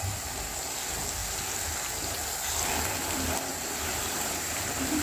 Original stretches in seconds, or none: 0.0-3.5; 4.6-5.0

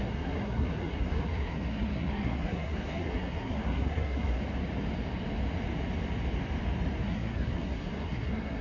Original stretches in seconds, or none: 4.4-7.0

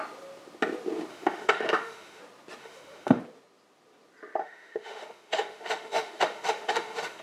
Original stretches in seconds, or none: 0.0-1.1; 2.2-2.6; 3.2-4.4